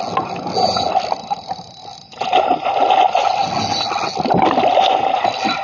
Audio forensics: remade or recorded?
recorded